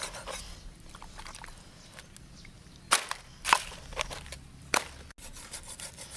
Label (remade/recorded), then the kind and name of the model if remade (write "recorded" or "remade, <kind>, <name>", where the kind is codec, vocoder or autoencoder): recorded